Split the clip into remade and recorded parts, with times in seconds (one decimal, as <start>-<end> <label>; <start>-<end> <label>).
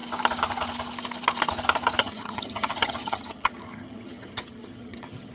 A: 0.0-2.0 recorded; 2.0-5.3 remade